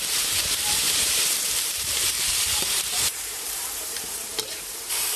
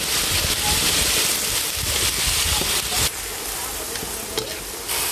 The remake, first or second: first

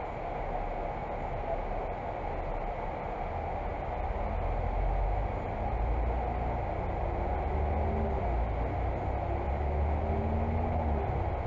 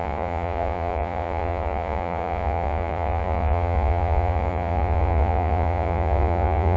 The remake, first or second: second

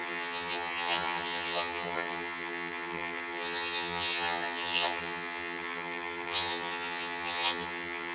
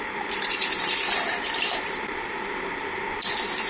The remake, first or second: first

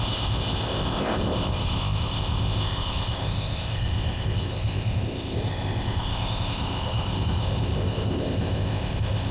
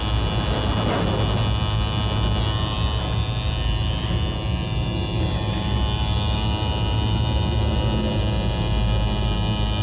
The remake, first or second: first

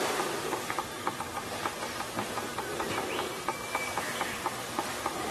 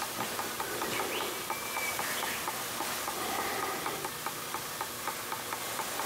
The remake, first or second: first